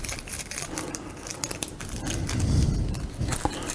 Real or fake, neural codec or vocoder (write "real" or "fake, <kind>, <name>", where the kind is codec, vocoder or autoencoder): real